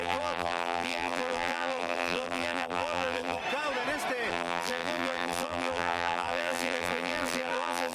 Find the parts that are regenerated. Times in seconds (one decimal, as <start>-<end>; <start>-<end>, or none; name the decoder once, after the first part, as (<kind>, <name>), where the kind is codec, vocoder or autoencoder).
0.0-3.4 (vocoder, BigVGAN v2); 4.3-7.9